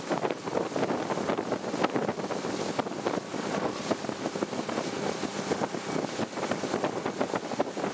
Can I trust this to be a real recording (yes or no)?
yes